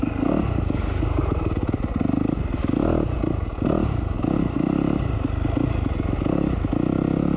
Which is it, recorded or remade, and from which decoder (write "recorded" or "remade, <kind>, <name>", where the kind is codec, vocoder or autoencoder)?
recorded